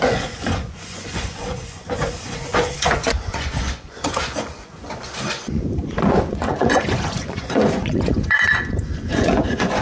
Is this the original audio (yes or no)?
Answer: no